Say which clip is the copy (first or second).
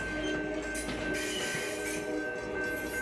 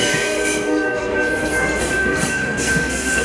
second